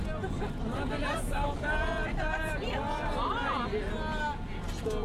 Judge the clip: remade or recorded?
recorded